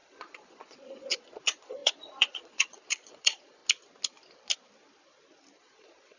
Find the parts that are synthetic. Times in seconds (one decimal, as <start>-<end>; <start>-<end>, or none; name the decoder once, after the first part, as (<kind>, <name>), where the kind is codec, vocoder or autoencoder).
0.0-3.6 (vocoder, Vocos); 5.6-6.2